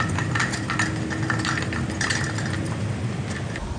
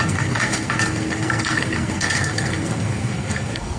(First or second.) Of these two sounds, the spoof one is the second